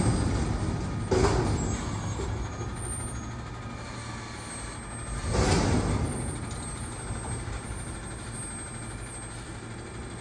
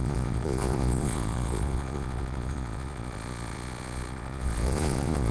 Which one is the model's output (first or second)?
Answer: second